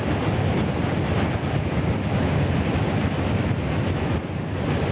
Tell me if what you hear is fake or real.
real